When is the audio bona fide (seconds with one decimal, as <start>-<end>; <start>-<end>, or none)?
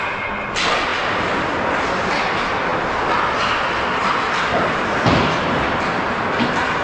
0.0-6.8